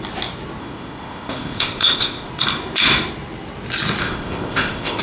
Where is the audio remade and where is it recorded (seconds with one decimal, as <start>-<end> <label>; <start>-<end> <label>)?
0.0-0.6 recorded; 0.6-2.3 remade; 2.3-4.0 recorded; 4.0-5.0 remade